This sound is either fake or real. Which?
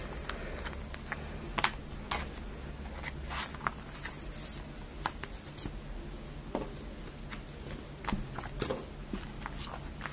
real